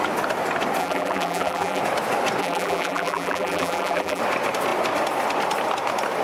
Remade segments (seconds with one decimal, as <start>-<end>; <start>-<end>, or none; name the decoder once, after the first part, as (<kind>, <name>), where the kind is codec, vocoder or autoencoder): 0.8-1.8 (vocoder, BigVGAN v2); 2.4-4.2